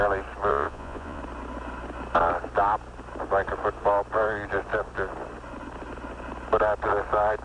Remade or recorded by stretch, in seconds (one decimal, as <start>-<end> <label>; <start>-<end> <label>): 0.0-0.5 recorded; 0.5-1.2 remade; 1.2-7.4 recorded